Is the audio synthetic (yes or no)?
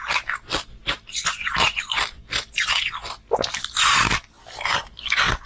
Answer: no